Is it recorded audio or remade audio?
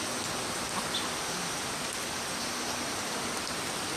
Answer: recorded